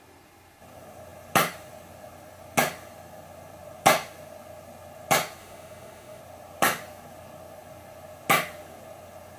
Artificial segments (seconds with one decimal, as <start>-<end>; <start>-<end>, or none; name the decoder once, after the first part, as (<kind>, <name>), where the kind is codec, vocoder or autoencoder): 5.4-6.2 (autoencoder, DAC-VAE)